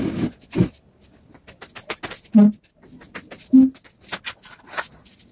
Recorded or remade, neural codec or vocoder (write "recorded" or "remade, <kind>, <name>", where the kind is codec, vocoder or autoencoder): recorded